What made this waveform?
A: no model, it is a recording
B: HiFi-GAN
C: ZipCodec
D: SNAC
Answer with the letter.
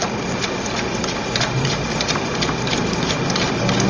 A